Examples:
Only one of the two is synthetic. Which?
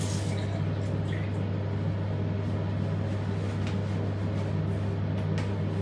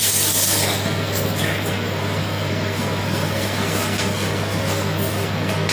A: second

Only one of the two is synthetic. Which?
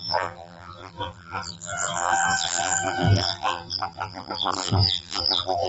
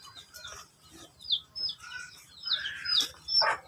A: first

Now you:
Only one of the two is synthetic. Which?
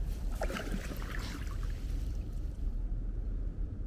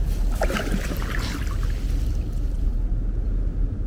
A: first